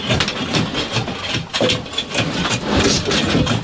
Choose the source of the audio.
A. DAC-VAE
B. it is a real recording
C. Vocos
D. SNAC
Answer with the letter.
B